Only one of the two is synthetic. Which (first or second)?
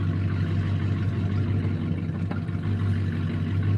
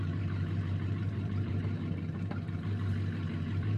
second